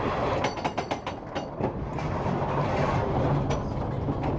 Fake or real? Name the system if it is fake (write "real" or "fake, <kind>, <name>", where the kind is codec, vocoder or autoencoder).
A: real